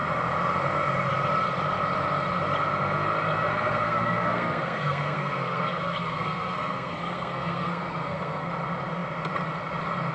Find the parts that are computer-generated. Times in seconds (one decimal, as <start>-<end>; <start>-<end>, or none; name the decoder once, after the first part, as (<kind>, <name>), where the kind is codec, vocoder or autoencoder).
3.5-8.5 (codec, SNAC)